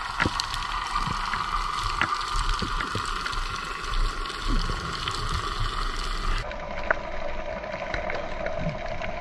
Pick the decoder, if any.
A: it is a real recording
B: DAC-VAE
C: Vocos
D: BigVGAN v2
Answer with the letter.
A